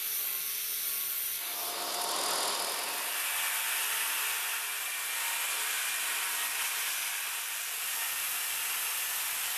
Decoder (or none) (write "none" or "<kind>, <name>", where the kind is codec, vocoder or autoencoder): none